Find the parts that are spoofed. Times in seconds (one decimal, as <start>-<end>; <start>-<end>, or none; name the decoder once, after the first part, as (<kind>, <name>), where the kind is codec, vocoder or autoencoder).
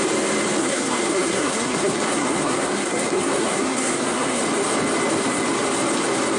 0.6-4.4 (codec, SNAC)